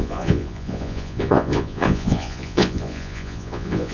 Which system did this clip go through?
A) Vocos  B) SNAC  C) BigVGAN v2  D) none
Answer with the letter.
A